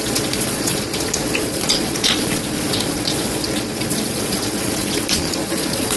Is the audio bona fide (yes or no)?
no